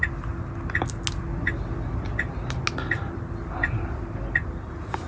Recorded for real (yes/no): yes